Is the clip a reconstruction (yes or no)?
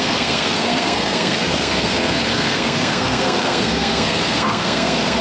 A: yes